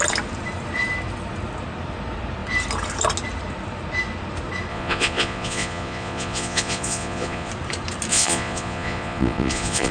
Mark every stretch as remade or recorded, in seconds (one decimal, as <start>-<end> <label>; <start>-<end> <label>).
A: 0.0-4.7 recorded; 4.7-7.5 remade; 7.5-8.1 recorded; 8.1-9.9 remade